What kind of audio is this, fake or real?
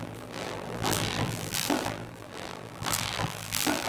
fake